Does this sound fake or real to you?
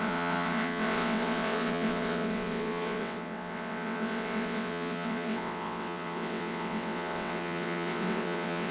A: fake